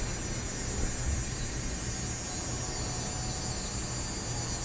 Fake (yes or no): no